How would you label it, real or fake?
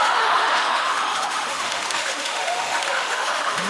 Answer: fake